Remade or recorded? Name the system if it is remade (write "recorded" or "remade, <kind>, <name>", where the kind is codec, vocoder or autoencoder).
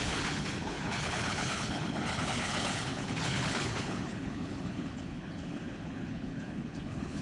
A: remade, codec, HILCodec